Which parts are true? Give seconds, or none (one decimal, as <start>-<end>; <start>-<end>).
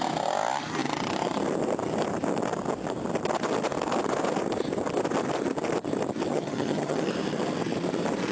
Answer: 0.0-6.3; 7.1-8.3